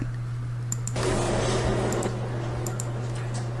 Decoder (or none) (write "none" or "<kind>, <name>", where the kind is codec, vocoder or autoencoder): none